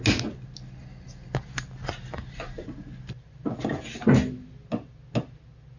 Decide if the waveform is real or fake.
real